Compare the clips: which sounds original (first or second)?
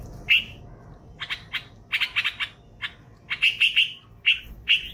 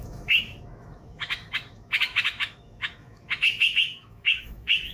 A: first